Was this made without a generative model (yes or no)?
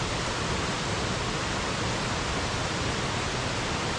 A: yes